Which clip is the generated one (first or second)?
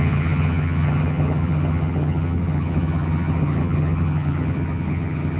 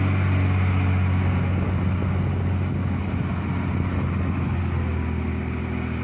first